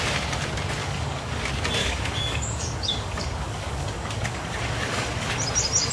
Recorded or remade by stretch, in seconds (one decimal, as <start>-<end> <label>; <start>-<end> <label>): 0.0-0.8 recorded; 0.8-1.4 remade; 1.4-1.8 recorded; 1.8-5.3 remade; 5.3-5.9 recorded